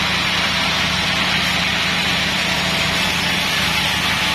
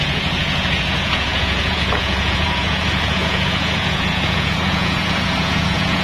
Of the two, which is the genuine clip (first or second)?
first